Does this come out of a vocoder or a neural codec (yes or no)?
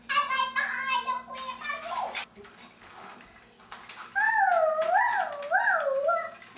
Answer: no